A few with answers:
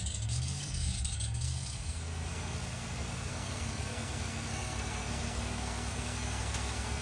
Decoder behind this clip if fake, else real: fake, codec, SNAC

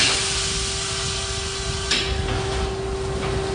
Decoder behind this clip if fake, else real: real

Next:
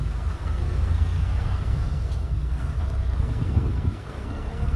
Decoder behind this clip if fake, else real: fake, codec, SNAC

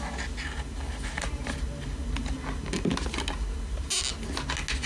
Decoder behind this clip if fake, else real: real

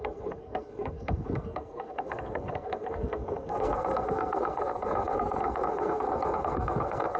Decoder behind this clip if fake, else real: fake, codec, SNAC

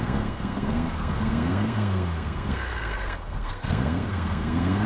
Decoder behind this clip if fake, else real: fake, codec, SNAC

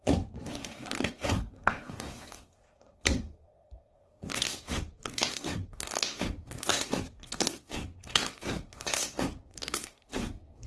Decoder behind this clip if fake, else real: fake, codec, SNAC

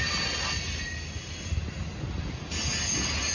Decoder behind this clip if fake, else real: real